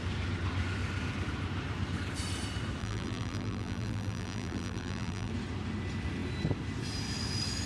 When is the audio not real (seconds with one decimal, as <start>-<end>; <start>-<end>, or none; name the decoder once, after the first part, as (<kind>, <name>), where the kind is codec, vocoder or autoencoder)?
2.8-5.3 (vocoder, BigVGAN v2)